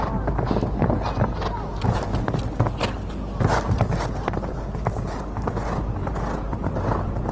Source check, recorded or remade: recorded